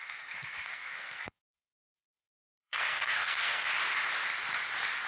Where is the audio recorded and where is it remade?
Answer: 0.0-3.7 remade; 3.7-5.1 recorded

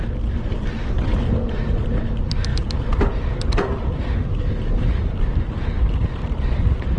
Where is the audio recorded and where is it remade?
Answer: 0.0-7.0 recorded

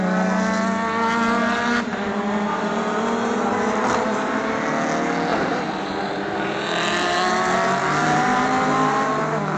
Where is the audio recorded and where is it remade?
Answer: 0.0-1.4 recorded; 1.4-4.4 remade; 4.4-5.3 recorded; 5.3-9.2 remade; 9.2-9.6 recorded